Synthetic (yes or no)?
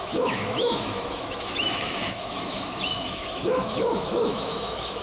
yes